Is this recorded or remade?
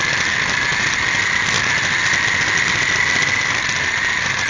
recorded